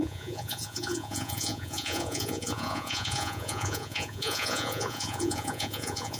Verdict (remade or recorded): remade